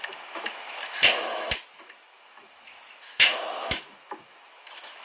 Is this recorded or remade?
remade